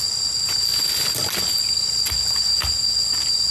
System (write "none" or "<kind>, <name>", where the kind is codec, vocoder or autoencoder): none